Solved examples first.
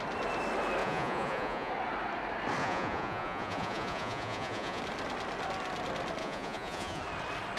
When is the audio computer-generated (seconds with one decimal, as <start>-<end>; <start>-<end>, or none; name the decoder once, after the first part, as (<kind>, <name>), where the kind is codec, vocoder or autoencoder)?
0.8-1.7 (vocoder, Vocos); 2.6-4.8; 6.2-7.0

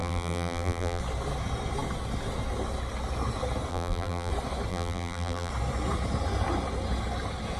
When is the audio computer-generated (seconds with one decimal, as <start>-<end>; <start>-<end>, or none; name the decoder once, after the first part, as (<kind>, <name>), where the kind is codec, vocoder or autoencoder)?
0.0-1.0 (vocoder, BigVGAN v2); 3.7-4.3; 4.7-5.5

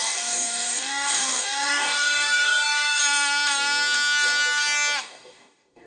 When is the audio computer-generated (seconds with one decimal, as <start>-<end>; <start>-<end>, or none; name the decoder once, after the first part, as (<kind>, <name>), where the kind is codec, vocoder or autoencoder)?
0.0-3.0 (codec, DAC); 5.0-5.9

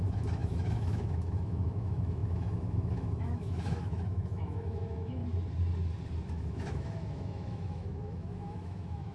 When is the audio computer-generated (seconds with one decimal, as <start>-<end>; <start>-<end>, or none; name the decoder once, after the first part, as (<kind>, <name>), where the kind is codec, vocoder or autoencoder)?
0.0-5.2 (autoencoder, DAC-VAE); 6.3-9.1

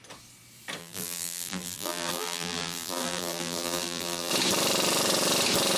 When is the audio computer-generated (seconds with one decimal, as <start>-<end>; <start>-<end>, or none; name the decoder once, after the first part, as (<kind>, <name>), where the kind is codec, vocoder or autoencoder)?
0.8-4.3 (vocoder, BigVGAN v2)

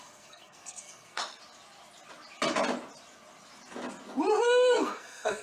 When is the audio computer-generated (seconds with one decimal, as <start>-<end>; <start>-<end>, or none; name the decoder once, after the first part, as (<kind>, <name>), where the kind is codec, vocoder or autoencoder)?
0.0-1.2 (codec, SNAC); 4.4-5.4

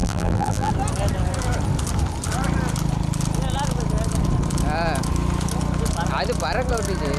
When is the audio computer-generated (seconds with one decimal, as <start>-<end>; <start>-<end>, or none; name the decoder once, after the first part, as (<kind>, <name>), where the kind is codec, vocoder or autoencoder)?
0.0-0.7 (vocoder, BigVGAN v2)